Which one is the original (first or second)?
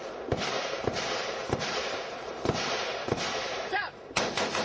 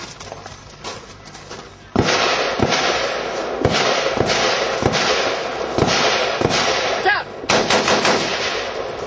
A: second